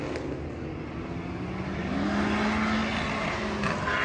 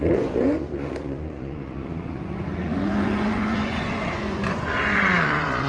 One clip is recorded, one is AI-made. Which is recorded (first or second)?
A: first